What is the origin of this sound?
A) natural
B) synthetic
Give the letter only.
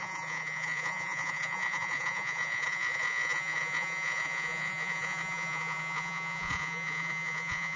B